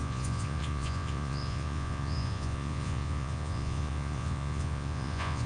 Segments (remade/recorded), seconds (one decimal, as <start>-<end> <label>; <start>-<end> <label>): 0.0-5.5 remade